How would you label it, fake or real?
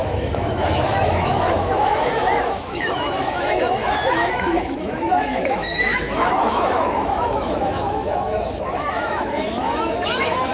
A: fake